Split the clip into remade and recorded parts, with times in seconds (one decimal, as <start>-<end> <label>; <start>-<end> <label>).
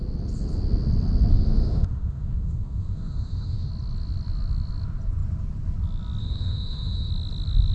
0.0-1.3 recorded; 1.3-3.7 remade; 3.7-6.2 recorded; 6.2-7.1 remade; 7.1-7.7 recorded